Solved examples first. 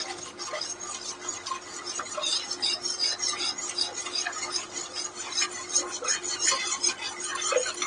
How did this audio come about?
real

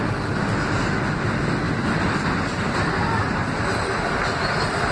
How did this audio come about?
real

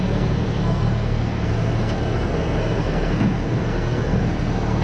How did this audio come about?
fake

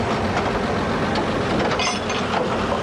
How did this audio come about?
real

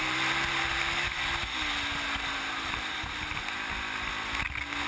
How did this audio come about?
real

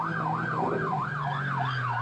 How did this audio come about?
real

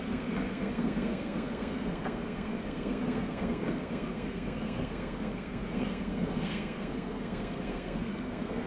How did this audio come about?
fake